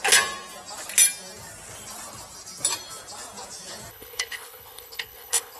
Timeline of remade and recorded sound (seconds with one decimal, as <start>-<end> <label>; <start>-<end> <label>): 0.0-3.9 recorded; 3.9-5.6 remade